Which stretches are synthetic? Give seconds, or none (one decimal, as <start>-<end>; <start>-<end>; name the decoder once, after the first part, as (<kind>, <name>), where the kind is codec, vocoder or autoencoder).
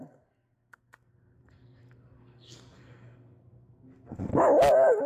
0.0-4.3 (codec, SNAC)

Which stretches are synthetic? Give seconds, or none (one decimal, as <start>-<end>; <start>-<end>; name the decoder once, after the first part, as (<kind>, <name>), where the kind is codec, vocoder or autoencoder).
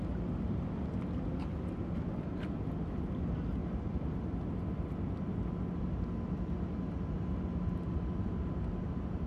none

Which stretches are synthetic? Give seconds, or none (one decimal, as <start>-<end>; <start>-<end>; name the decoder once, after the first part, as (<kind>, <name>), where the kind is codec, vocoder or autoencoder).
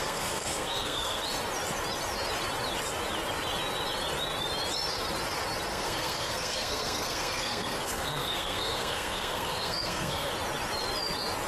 0.0-1.2 (codec, SNAC); 5.7-10.3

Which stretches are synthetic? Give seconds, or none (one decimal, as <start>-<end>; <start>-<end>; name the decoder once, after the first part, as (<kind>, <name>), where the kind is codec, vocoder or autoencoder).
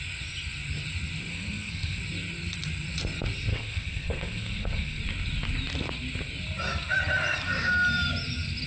1.3-2.0 (codec, SNAC); 3.5-5.0